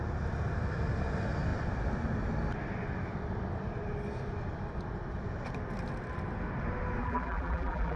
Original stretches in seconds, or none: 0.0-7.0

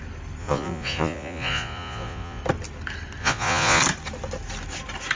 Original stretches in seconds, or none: 0.0-0.4; 2.4-3.2; 3.8-5.2